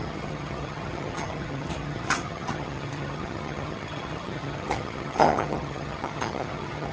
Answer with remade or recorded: remade